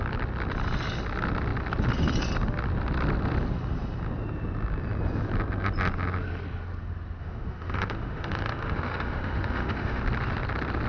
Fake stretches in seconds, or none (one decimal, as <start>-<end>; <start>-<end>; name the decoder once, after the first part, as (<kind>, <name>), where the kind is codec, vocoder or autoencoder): 7.2-10.0 (autoencoder, DAC-VAE)